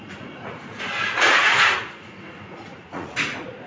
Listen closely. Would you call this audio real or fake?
fake